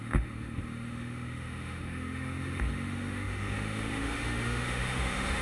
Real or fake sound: fake